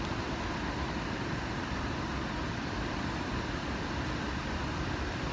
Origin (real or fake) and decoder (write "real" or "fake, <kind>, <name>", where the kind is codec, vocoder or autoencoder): real